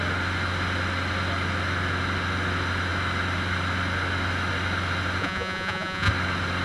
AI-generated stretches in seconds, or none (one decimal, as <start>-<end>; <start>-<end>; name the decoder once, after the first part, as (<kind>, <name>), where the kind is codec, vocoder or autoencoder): 5.2-6.1 (vocoder, Vocos)